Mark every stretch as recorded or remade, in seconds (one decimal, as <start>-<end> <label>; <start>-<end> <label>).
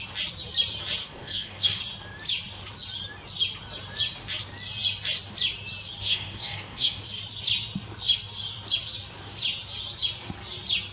0.0-1.0 recorded; 1.0-1.8 remade; 1.8-6.0 recorded; 6.0-7.0 remade; 7.0-10.9 recorded